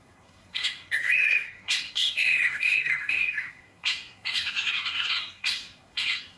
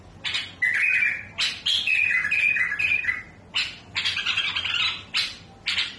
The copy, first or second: first